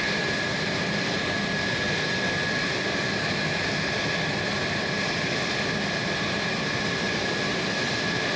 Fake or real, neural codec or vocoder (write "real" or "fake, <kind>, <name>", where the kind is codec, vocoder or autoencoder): real